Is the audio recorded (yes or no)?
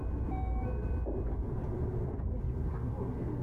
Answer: yes